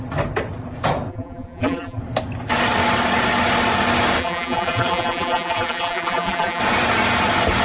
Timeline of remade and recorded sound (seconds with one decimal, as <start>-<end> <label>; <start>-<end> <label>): 0.0-1.1 recorded; 1.1-2.0 remade; 2.0-4.2 recorded; 4.2-6.6 remade; 6.6-7.6 recorded